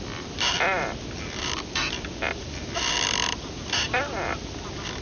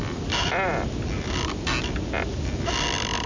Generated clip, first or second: first